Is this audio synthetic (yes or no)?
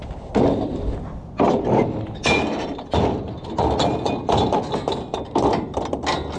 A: no